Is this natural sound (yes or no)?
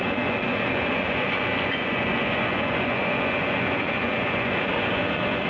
no